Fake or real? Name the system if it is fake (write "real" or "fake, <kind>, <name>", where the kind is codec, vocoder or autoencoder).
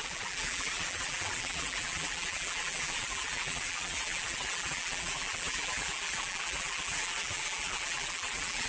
fake, vocoder, BigVGAN v2